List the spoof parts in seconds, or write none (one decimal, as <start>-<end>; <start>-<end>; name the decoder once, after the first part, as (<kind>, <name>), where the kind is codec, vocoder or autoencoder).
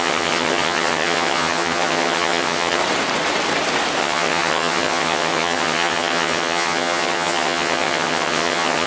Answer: 0.0-2.8 (vocoder, HiFi-GAN); 4.0-8.9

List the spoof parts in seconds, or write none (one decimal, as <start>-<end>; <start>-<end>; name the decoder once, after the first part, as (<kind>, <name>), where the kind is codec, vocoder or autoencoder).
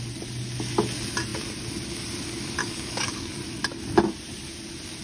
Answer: 2.6-3.4 (codec, DAC)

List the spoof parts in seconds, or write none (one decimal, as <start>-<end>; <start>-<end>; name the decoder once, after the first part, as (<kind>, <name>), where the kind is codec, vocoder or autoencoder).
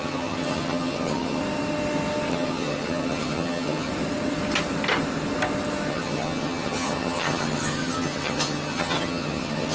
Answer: 0.0-1.4 (vocoder, HiFi-GAN); 2.3-3.9; 5.9-9.7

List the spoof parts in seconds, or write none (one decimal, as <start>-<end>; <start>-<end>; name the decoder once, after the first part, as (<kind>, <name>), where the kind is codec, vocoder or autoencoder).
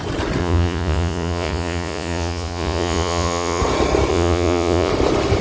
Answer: 0.4-3.6 (vocoder, Vocos); 4.1-4.9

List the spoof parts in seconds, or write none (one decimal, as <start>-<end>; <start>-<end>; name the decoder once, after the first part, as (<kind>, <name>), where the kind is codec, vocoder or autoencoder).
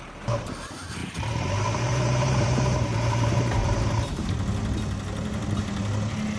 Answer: 1.0-4.3 (vocoder, BigVGAN v2)